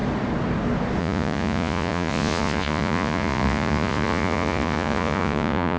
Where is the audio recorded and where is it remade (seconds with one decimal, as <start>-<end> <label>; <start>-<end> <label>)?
0.0-1.0 recorded; 1.0-5.8 remade